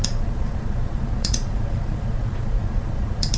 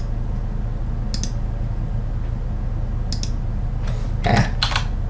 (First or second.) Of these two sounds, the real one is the second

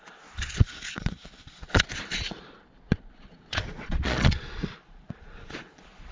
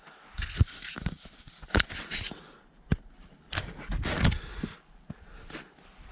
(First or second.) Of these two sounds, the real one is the second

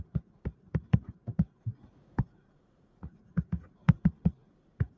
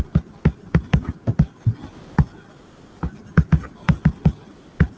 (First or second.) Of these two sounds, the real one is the second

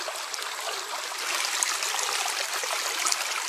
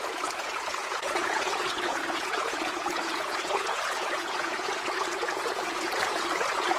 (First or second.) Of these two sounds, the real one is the first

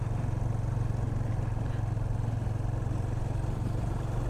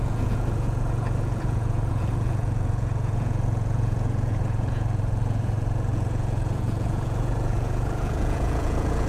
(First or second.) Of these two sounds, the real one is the first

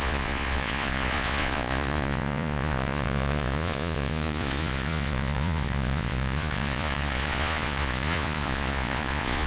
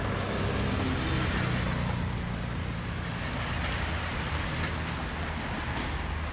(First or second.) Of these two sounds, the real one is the second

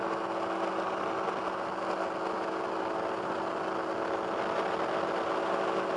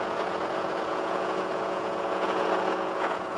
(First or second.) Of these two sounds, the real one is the first